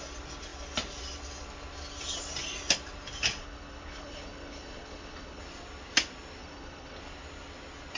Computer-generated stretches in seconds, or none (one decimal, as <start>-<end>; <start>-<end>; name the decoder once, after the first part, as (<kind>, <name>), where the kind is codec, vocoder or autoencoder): 3.4-5.4 (codec, HILCodec); 6.4-7.0